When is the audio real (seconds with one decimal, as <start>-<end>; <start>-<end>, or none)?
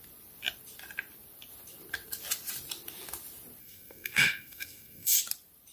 0.0-3.6; 5.2-5.7